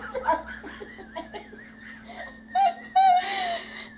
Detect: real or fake fake